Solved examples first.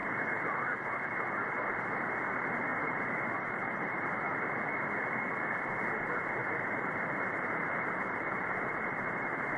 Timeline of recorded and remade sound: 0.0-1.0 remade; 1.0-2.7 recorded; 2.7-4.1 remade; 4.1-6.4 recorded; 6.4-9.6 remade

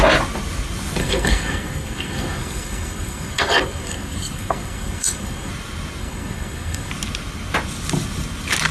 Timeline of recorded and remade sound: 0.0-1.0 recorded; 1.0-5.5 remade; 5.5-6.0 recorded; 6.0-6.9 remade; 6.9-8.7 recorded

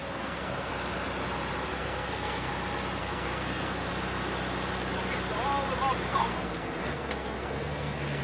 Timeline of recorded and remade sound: 0.0-0.7 remade; 0.7-1.7 recorded; 1.7-2.5 remade; 2.5-3.0 recorded; 3.0-3.9 remade; 3.9-6.1 recorded; 6.1-8.2 remade

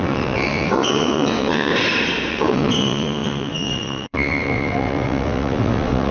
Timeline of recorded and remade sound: 0.0-1.7 remade; 1.7-2.3 recorded; 2.3-6.1 remade

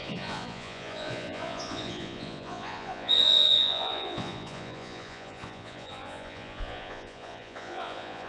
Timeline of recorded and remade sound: 0.0-8.3 remade